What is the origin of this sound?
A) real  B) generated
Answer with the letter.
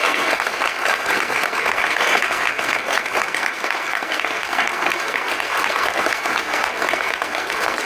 B